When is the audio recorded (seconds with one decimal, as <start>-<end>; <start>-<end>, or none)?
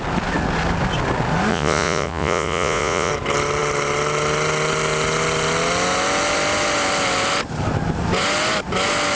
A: 0.0-1.5; 3.1-9.1